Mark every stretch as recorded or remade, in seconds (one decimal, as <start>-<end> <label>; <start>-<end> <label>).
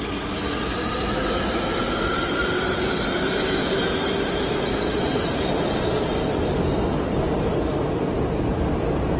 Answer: 0.0-9.2 recorded